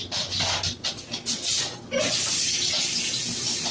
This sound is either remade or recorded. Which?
recorded